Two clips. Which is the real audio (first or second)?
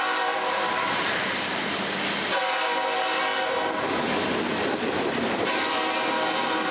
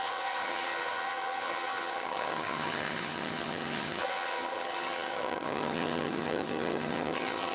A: first